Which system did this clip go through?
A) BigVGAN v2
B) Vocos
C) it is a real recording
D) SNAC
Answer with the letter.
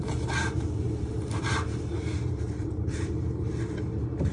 A